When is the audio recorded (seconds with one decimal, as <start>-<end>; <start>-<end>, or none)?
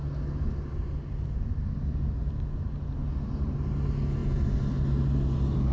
0.0-5.7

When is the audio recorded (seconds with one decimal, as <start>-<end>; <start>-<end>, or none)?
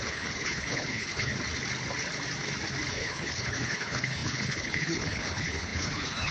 1.3-2.9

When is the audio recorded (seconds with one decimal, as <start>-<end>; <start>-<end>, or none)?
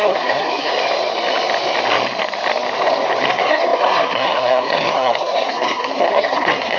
0.7-3.3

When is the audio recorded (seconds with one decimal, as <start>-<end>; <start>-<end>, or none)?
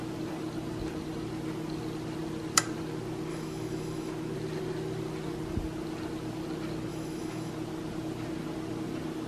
0.0-3.3; 4.1-6.9; 7.5-9.3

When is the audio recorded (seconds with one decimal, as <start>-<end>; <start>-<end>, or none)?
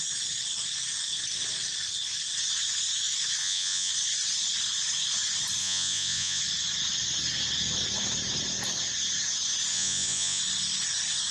0.0-3.4; 3.9-5.6; 6.4-9.7; 10.4-11.3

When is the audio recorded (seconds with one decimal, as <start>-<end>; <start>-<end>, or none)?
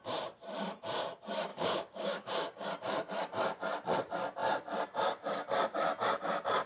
0.0-1.5; 2.7-6.7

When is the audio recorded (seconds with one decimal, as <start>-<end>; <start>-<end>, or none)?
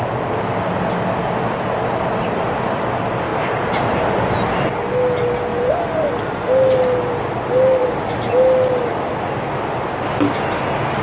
0.0-3.3; 4.1-5.5; 6.1-11.0